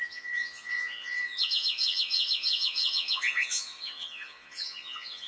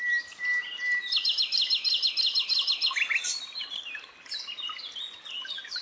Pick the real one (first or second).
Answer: second